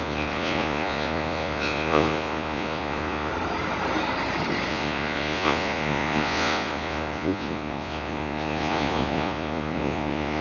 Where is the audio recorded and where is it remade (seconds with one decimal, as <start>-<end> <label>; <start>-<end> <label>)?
0.0-3.3 remade; 3.3-4.7 recorded; 4.7-10.4 remade